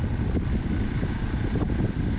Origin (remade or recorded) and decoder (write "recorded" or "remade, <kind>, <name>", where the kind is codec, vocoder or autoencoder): recorded